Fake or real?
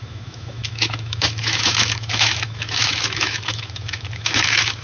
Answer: fake